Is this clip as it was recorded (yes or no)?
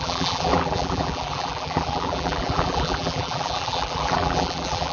no